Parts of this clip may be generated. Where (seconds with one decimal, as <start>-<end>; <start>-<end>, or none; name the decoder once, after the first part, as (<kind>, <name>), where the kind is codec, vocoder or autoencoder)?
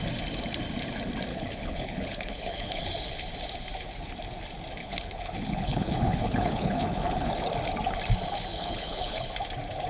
1.3-2.8 (codec, HILCodec); 4.8-7.3; 8.5-9.3